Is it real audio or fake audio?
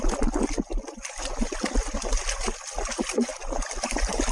real